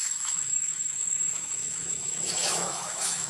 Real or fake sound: fake